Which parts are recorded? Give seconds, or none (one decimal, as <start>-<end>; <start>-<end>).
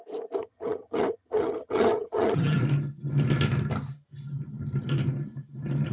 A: 0.0-0.4; 2.6-5.9